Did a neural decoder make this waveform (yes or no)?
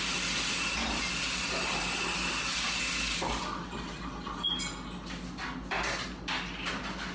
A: no